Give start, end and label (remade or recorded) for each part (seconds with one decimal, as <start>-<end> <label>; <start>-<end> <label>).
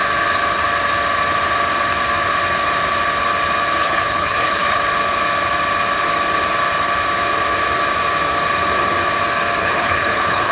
0.0-3.8 recorded; 3.8-4.8 remade; 4.8-9.6 recorded; 9.6-10.5 remade